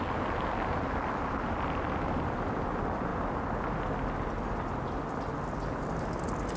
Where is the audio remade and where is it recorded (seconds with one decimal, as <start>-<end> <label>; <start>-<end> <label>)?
0.0-6.6 recorded